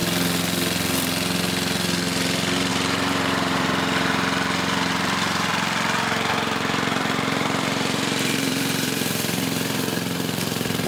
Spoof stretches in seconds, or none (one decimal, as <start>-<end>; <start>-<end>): 2.7-5.5; 6.3-10.9